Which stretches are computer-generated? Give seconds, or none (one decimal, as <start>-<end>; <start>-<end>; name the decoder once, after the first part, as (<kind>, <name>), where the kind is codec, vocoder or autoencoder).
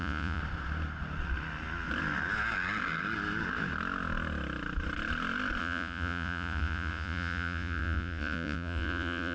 0.0-0.4 (vocoder, Vocos); 5.6-9.3